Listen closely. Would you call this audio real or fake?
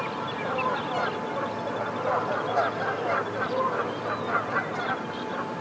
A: real